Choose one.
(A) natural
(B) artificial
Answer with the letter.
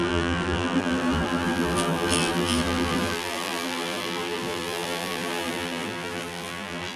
B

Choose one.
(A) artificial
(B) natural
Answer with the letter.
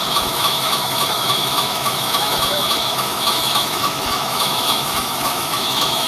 A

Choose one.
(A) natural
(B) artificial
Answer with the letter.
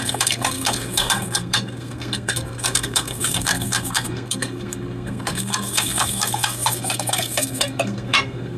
B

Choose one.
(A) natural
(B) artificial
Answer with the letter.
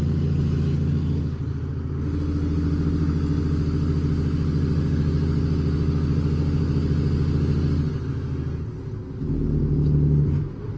A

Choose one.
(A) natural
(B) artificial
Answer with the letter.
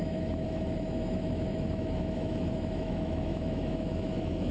B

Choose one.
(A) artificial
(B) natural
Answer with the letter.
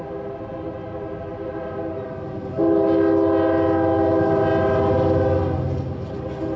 B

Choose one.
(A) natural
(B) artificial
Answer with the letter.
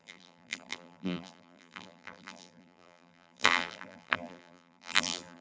B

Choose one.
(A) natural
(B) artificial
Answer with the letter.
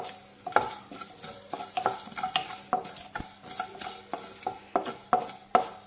A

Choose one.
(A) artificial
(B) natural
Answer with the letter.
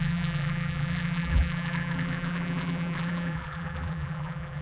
A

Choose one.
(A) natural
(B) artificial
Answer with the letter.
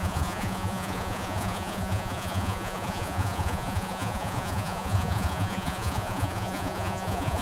B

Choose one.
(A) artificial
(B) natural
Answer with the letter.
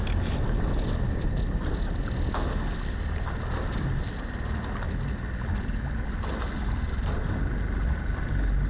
B